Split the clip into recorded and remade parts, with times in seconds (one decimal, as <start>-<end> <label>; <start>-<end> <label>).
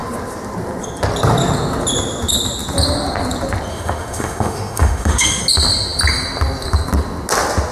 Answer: 0.0-3.7 recorded; 3.7-5.4 remade; 5.4-7.7 recorded